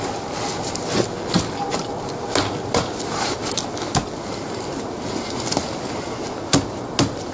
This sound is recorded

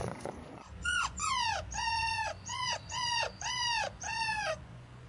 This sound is remade